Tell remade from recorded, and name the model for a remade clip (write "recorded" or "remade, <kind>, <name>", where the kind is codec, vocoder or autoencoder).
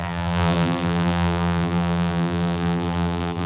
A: remade, vocoder, BigVGAN v2